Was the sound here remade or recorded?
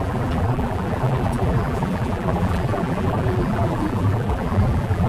remade